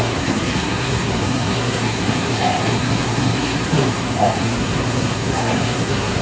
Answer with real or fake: fake